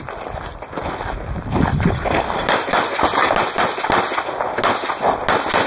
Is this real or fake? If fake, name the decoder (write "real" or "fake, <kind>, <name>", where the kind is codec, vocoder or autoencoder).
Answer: real